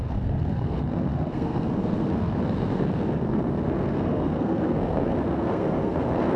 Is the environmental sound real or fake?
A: fake